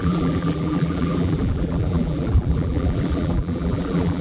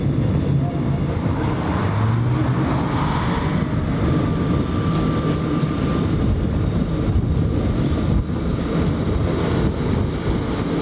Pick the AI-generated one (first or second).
first